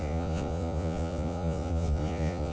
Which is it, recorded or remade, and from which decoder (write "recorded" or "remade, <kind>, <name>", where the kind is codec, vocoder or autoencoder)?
remade, vocoder, Vocos